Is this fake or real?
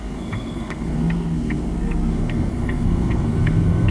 fake